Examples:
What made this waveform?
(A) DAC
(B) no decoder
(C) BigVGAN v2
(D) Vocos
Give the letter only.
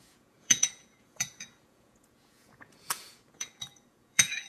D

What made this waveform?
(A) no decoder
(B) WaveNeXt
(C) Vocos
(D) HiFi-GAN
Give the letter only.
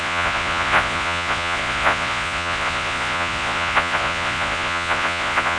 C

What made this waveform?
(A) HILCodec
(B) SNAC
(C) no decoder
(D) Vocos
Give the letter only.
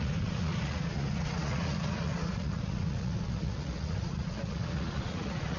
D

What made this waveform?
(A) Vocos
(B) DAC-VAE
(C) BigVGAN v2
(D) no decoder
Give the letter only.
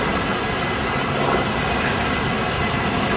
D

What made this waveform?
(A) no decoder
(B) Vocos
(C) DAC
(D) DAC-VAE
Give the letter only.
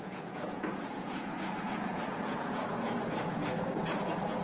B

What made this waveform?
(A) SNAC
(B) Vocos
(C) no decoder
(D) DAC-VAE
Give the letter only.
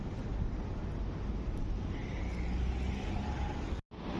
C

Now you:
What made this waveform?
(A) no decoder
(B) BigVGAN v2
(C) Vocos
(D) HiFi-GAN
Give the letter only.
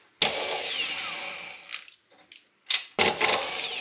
A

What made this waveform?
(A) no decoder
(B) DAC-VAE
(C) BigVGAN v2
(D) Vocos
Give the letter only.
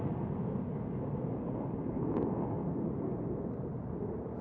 A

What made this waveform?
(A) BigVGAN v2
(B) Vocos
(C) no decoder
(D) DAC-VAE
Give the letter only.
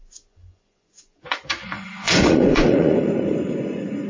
B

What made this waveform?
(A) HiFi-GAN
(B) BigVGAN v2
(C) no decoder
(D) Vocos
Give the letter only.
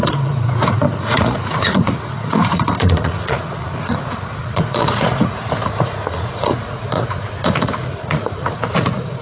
D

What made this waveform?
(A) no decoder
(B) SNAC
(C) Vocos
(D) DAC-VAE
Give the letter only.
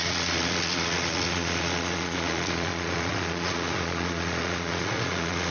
C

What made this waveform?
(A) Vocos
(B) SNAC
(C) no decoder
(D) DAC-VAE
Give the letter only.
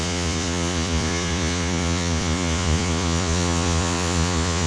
A